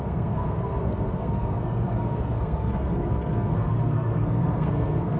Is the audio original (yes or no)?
no